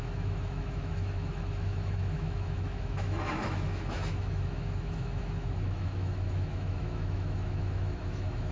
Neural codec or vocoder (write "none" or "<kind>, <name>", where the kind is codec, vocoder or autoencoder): autoencoder, DAC-VAE